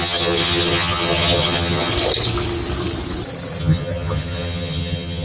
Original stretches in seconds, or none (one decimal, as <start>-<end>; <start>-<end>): 1.9-3.6

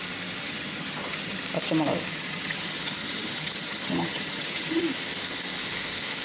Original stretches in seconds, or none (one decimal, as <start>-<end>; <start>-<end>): 0.0-0.4; 1.4-2.1; 4.8-6.2